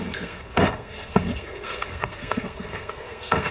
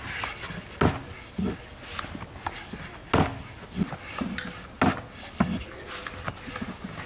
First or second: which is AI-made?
first